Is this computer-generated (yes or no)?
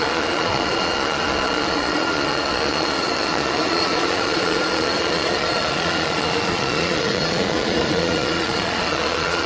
yes